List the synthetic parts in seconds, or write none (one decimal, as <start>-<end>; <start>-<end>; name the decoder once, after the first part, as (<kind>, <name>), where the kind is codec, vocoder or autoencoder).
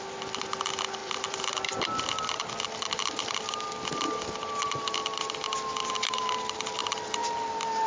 1.0-2.5 (vocoder, BigVGAN v2); 6.8-7.9